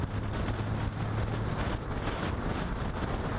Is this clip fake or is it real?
real